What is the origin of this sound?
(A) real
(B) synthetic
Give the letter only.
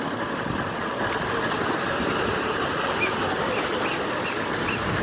A